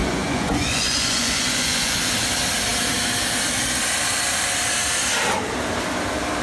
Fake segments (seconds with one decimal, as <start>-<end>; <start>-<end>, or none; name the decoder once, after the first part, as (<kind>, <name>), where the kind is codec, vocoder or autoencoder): 0.0-2.1 (vocoder, Vocos)